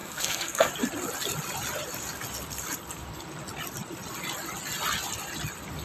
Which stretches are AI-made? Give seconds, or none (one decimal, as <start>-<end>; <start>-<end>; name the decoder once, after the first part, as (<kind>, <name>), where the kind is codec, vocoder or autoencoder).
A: 0.0-0.7 (codec, SNAC)